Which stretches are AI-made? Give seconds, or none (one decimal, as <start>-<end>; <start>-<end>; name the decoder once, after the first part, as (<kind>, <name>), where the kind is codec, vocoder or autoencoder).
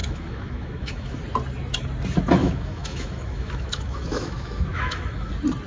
0.0-1.2 (autoencoder, DAC-VAE); 2.4-5.3